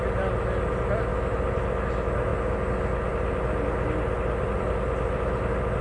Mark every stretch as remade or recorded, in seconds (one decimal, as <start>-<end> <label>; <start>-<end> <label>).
0.0-5.8 recorded